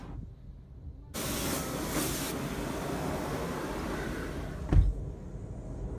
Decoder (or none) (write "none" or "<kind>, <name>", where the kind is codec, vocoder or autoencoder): none